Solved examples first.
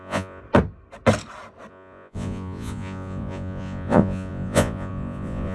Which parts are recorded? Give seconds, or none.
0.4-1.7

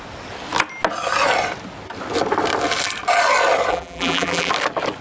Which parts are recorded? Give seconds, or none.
0.0-3.7; 4.5-5.0

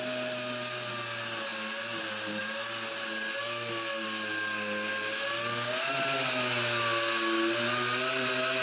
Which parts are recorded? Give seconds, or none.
0.0-8.6